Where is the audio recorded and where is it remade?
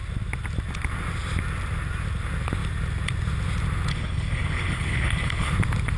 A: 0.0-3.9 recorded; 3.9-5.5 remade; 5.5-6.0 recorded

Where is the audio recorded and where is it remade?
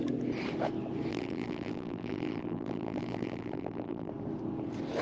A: 0.0-1.1 recorded; 1.1-4.1 remade; 4.1-5.0 recorded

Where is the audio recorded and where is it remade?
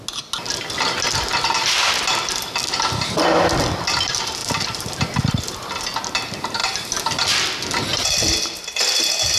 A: 0.0-4.4 recorded; 4.4-5.8 remade; 5.8-7.9 recorded; 7.9-8.8 remade; 8.8-9.4 recorded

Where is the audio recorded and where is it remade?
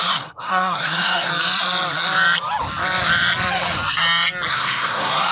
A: 0.0-1.3 remade; 1.3-4.5 recorded; 4.5-5.3 remade